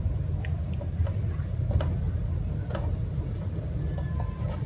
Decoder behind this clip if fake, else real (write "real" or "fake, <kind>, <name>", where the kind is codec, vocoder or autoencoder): real